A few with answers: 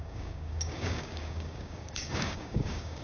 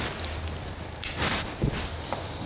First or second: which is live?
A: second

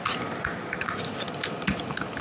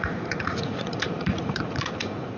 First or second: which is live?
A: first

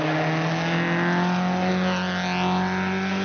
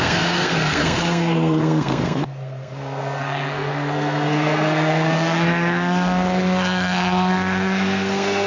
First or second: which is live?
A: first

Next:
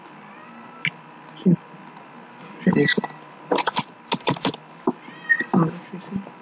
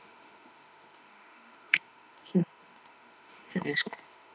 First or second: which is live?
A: first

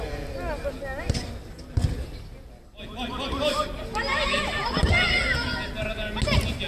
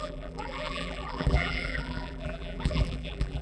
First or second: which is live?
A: first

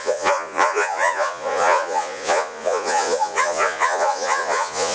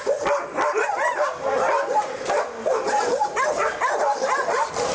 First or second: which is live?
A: second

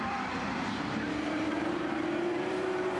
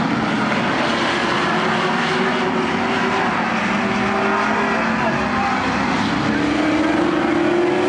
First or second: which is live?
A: second